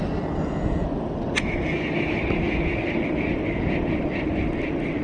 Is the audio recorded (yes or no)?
yes